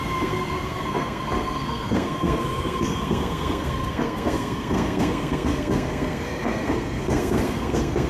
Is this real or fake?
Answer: fake